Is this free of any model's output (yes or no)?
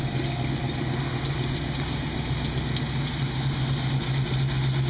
yes